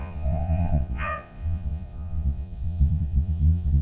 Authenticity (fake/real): fake